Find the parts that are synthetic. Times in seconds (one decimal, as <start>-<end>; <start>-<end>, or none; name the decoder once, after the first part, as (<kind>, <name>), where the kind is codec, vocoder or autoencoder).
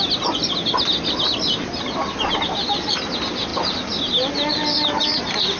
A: none